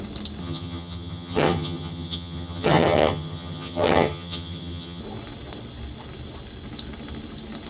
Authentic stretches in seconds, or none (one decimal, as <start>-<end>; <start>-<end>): 0.0-0.4; 5.0-7.7